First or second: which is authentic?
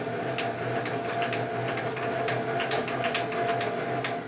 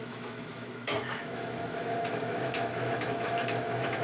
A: first